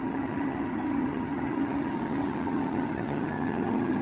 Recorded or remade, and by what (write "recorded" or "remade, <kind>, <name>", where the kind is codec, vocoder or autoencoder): remade, vocoder, HiFi-GAN